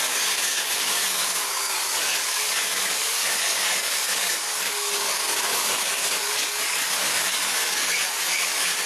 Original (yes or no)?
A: no